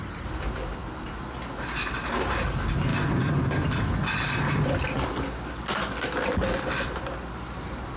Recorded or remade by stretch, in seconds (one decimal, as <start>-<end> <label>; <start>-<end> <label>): 0.0-0.8 recorded; 0.8-1.4 remade; 1.4-8.0 recorded